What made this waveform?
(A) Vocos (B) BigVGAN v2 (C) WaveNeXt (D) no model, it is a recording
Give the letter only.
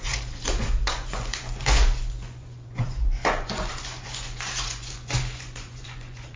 A